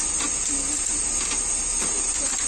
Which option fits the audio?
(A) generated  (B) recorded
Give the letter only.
B